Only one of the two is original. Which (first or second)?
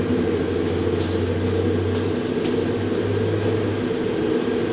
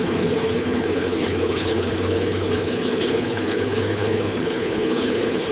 first